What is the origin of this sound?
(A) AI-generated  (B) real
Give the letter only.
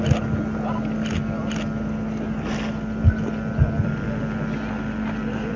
B